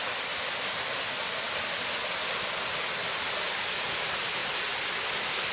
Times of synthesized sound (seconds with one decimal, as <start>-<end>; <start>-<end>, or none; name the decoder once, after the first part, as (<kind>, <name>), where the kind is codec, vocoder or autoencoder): none